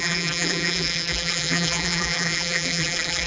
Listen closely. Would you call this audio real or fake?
fake